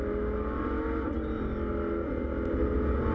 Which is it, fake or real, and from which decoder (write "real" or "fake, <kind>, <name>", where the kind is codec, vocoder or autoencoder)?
real